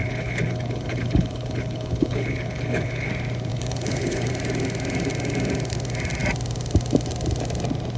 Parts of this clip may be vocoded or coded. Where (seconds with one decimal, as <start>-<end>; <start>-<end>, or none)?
0.0-3.1; 3.5-4.3